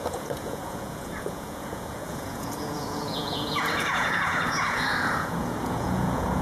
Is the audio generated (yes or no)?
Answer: yes